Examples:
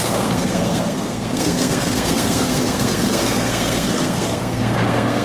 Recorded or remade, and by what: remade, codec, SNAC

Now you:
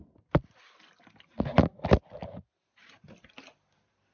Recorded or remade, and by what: recorded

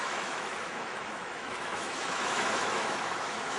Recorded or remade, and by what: remade, autoencoder, DAC-VAE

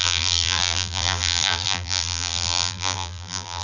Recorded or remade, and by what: remade, vocoder, BigVGAN v2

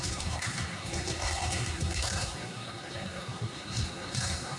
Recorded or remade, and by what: remade, codec, SNAC